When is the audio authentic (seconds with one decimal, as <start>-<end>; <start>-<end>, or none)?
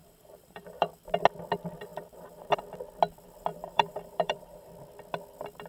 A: 0.9-1.9; 2.6-3.5; 4.7-5.7